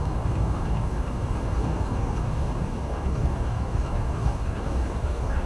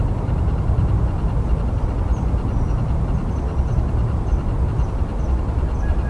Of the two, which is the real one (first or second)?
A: second